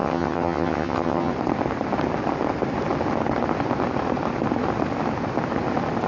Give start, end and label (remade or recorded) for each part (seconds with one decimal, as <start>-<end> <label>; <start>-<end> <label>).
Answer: 0.0-1.3 remade; 1.3-6.1 recorded